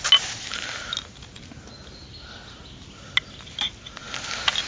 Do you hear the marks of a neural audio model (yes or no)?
no